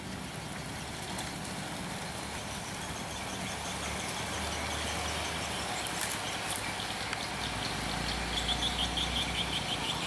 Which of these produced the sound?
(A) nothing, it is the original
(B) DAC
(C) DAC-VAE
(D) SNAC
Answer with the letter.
A